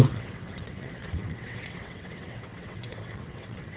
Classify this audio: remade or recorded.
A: remade